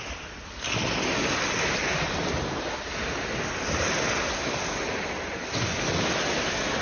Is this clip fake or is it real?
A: real